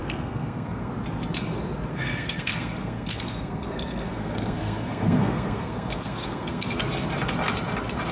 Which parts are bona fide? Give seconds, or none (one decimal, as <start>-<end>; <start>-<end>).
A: 0.9-1.9; 6.8-8.1